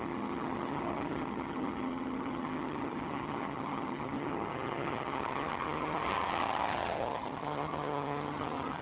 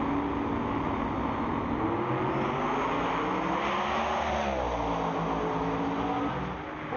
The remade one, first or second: first